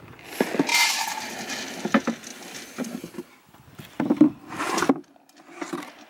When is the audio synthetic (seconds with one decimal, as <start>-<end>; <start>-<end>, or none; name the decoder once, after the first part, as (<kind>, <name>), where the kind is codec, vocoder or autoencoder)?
0.7-1.3 (vocoder, BigVGAN v2)

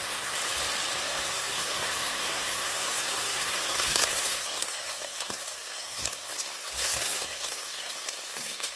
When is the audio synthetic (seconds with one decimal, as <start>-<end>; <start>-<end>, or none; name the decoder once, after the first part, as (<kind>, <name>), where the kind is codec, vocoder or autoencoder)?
0.0-0.4 (codec, SNAC); 1.0-8.8

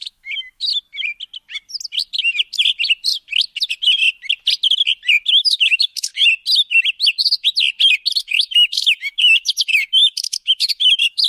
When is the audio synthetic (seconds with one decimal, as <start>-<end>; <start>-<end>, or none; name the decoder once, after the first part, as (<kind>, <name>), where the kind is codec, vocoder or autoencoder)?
0.0-0.7 (autoencoder, DAC-VAE); 5.3-6.1; 8.2-11.3